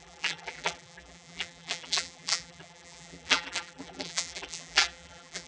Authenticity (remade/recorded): remade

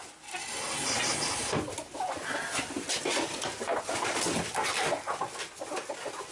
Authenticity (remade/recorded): recorded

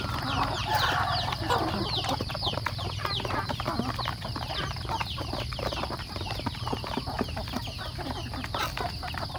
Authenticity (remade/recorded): recorded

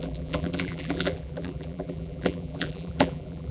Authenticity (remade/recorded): remade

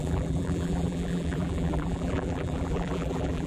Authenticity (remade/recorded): remade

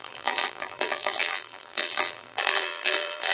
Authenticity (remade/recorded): remade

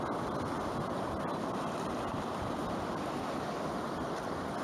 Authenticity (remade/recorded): recorded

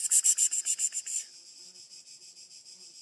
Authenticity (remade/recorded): recorded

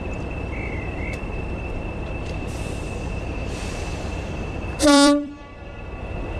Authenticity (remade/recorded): remade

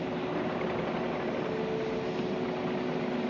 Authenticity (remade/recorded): recorded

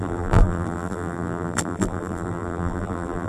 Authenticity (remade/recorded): remade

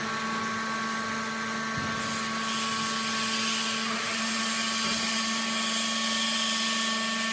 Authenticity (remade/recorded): recorded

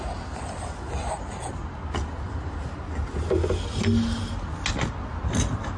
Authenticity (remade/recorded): recorded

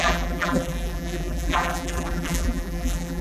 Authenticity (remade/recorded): remade